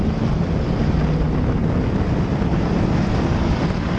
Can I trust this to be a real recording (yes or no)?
yes